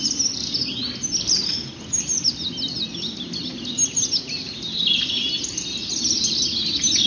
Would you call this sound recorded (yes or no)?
yes